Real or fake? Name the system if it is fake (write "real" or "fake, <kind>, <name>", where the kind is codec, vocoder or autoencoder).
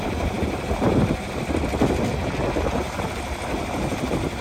real